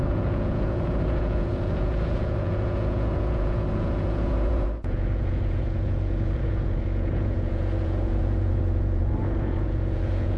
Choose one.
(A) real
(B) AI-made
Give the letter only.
B